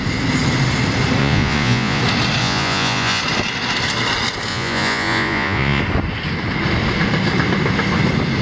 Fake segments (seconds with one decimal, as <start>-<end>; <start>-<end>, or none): 1.2-2.0; 2.4-3.2; 4.5-5.8